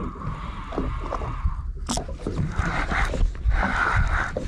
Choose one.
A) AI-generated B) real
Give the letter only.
B